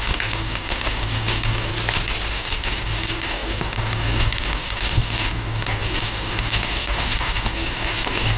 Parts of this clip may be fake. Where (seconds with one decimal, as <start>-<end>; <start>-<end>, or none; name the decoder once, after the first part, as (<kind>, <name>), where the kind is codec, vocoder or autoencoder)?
0.0-1.7 (codec, DAC); 2.3-8.4